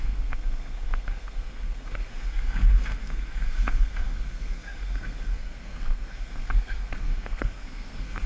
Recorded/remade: remade